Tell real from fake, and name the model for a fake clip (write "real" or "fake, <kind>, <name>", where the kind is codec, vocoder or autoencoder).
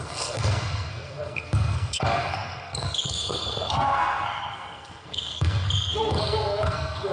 fake, codec, SNAC